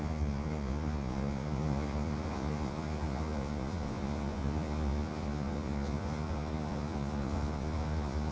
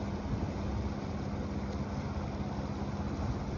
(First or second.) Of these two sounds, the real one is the second